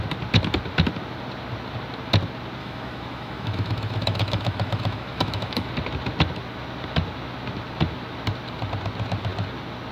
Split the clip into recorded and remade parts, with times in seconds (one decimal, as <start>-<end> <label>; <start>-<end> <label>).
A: 0.0-2.6 recorded; 2.6-5.7 remade; 5.7-9.9 recorded